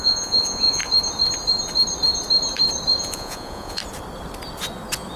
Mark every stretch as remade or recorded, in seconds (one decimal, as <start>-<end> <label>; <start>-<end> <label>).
0.0-0.8 remade; 0.8-3.0 recorded; 3.0-3.8 remade; 3.8-5.2 recorded